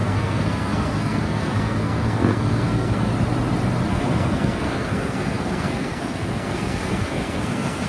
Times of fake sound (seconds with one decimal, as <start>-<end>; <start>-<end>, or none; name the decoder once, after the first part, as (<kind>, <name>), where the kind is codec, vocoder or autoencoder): 0.0-3.1 (codec, SNAC); 3.9-7.9